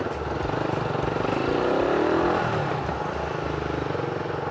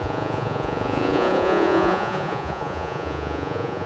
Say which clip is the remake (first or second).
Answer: second